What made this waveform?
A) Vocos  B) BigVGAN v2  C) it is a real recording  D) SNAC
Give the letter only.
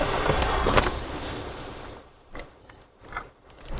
B